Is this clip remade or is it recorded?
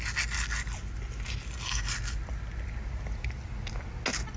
recorded